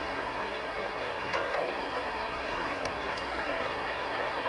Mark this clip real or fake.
fake